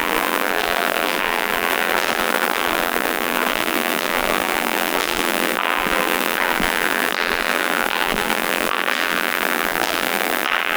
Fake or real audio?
fake